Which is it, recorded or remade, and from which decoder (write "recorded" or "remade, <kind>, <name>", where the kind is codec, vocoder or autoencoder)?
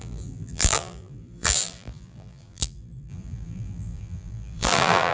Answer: remade, vocoder, BigVGAN v2